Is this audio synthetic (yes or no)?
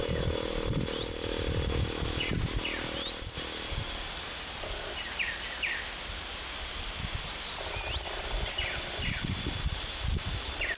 no